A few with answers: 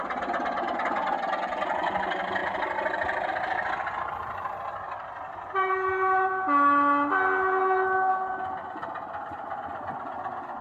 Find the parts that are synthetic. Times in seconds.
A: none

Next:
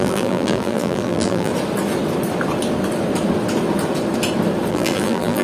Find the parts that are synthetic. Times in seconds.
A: 0.0-1.5 (vocoder, BigVGAN v2); 4.7-5.4

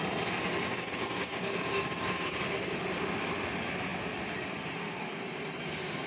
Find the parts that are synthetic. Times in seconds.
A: 0.7-2.4 (codec, DAC)

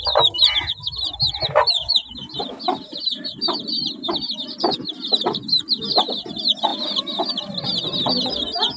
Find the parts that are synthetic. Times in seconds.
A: none

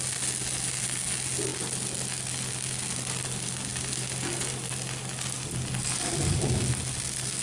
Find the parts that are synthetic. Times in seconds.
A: none